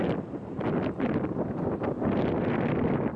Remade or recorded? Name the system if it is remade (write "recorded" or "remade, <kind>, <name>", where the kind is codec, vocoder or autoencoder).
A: recorded